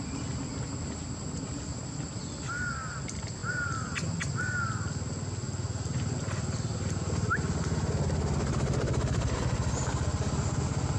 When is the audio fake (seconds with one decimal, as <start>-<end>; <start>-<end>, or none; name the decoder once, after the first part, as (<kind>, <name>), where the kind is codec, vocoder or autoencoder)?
none